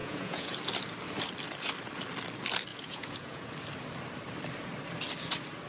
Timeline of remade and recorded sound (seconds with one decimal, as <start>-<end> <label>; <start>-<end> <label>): 0.0-0.5 remade; 0.5-2.7 recorded; 2.7-3.5 remade; 3.5-5.7 recorded